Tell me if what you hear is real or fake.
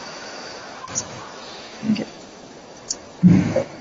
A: fake